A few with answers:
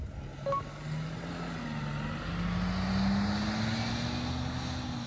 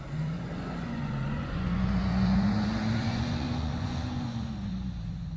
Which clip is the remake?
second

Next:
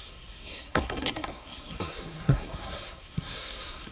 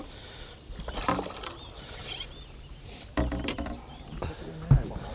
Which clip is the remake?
first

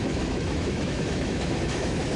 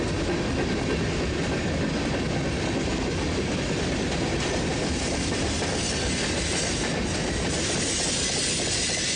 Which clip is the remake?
first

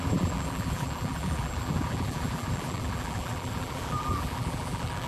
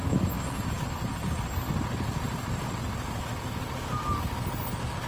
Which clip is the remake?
first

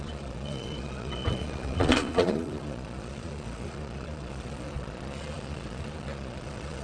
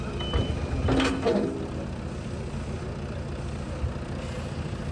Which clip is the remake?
first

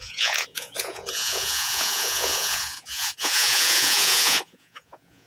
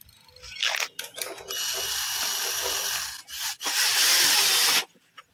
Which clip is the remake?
first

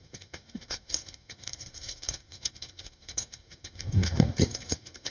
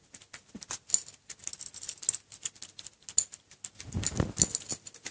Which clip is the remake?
first